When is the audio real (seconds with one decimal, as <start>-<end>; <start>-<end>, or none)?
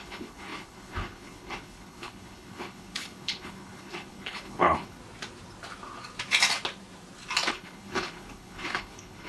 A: 5.0-7.5